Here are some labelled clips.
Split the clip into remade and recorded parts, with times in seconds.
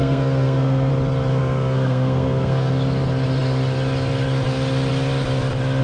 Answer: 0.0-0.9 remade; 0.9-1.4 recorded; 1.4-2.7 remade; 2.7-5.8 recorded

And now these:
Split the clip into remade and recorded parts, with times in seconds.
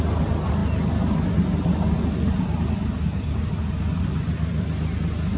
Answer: 0.0-5.4 recorded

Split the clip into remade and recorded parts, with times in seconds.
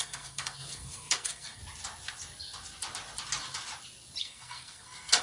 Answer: 0.0-1.6 remade; 1.6-4.2 recorded; 4.2-5.2 remade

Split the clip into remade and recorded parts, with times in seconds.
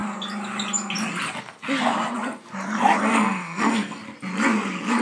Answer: 0.0-3.0 recorded; 3.0-4.0 remade; 4.0-5.0 recorded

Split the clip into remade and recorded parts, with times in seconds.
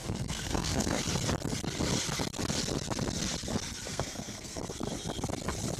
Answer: 0.0-1.0 remade; 1.0-3.9 recorded; 3.9-4.6 remade; 4.6-5.8 recorded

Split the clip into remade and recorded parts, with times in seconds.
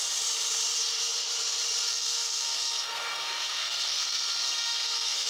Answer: 0.0-1.9 recorded; 1.9-5.3 remade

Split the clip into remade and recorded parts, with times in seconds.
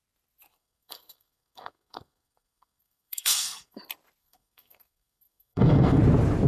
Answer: 0.0-0.5 recorded; 0.5-3.8 remade; 3.8-4.2 recorded; 4.2-6.0 remade; 6.0-6.5 recorded